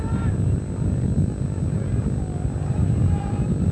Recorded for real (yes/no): yes